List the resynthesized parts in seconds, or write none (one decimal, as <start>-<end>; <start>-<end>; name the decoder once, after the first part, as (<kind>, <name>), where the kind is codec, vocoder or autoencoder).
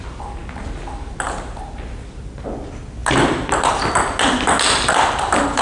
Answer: none